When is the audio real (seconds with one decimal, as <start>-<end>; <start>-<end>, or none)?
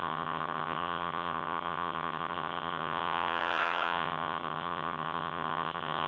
none